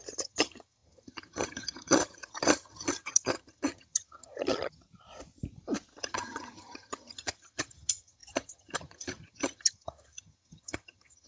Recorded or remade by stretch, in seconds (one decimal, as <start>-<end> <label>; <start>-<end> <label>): 0.0-4.8 remade; 4.8-6.0 recorded; 6.0-11.3 remade